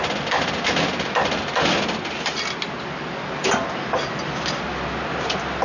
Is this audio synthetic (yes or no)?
no